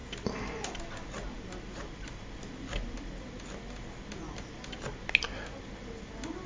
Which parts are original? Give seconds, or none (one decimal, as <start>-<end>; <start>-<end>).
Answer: 0.0-6.5